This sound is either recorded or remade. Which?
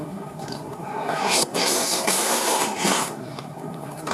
remade